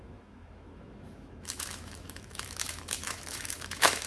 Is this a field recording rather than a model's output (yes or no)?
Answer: no